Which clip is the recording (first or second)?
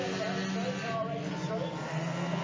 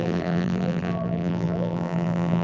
first